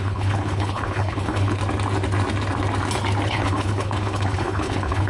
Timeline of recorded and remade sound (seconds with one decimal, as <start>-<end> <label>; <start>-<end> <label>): 0.0-1.6 remade; 1.6-3.3 recorded; 3.3-5.1 remade